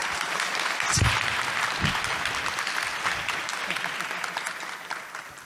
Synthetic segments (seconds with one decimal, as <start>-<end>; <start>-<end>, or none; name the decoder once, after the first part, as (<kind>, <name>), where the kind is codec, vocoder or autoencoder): 0.0-0.5 (vocoder, BigVGAN v2)